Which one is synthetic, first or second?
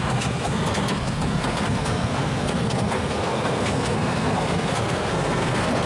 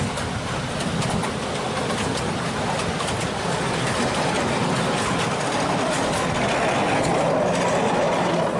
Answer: first